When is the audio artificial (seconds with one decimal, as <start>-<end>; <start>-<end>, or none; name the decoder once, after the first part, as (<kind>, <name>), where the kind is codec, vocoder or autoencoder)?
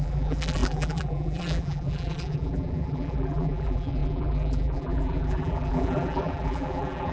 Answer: 0.0-7.1 (vocoder, BigVGAN v2)